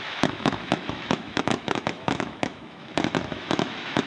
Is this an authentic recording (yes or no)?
no